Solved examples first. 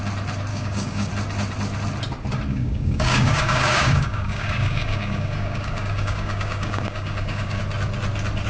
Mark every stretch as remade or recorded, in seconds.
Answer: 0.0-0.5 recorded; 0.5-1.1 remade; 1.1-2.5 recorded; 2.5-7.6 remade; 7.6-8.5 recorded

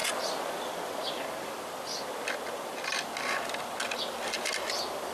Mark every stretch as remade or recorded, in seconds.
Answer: 0.0-5.1 recorded

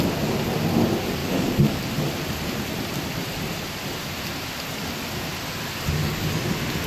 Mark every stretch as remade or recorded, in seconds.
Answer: 0.0-1.2 recorded; 1.2-1.8 remade; 1.8-6.0 recorded; 6.0-6.5 remade; 6.5-6.9 recorded

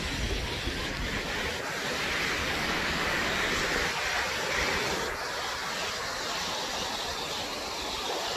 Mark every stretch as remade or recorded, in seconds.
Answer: 0.0-2.4 recorded; 2.4-3.5 remade; 3.5-8.4 recorded